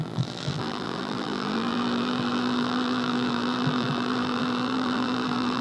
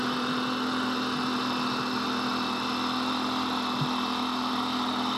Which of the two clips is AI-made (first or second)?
first